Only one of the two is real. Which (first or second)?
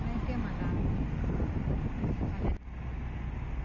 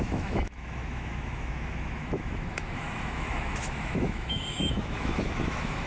first